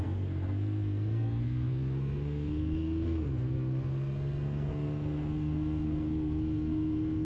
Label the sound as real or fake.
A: fake